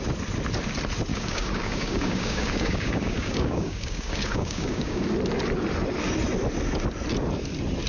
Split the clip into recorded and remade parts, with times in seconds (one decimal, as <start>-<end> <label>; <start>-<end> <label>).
0.0-1.1 recorded; 1.1-5.0 remade; 5.0-7.9 recorded